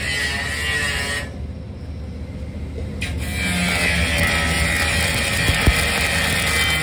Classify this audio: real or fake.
real